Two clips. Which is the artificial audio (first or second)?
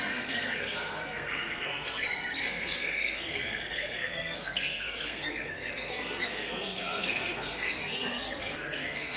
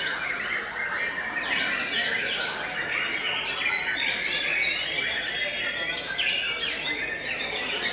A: first